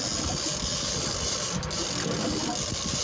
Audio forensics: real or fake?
real